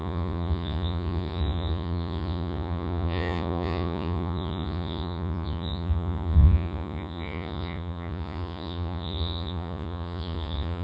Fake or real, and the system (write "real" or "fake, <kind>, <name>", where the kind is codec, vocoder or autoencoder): fake, vocoder, Vocos